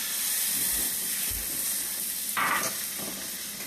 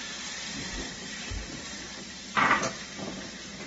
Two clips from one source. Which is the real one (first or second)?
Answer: first